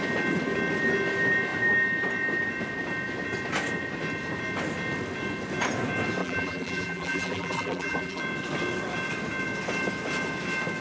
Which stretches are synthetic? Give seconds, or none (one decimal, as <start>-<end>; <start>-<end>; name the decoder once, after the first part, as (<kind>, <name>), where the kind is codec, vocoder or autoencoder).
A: 6.2-8.2 (vocoder, BigVGAN v2)